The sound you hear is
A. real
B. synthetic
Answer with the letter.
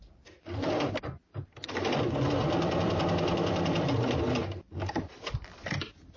B